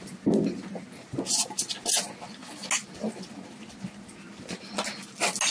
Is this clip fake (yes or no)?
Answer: no